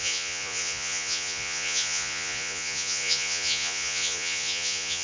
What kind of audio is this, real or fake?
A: fake